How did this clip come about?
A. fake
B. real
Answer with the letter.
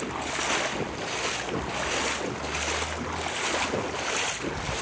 B